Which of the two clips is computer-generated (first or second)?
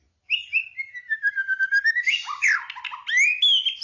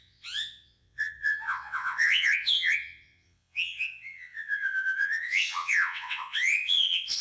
second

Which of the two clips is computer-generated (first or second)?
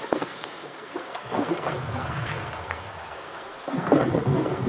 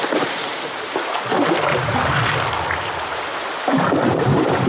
first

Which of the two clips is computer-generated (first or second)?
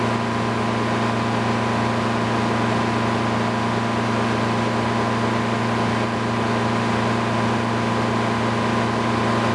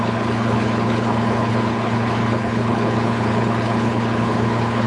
second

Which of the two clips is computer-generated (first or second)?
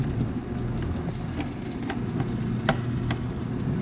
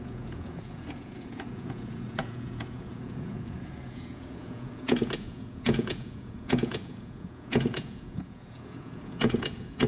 second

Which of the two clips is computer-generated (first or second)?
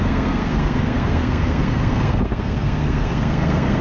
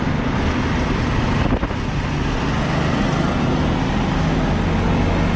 first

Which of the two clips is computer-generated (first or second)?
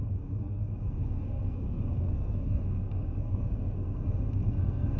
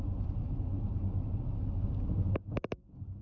first